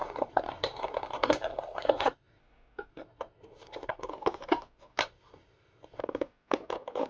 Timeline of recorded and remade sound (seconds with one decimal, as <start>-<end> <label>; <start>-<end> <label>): 0.0-2.4 remade; 2.4-2.9 recorded; 2.9-4.1 remade; 4.1-5.0 recorded; 5.0-6.0 remade; 6.0-7.1 recorded